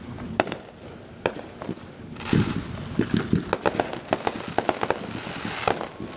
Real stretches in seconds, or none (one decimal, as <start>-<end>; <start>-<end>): 2.4-6.2